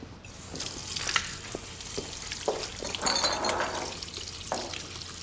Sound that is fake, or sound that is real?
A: real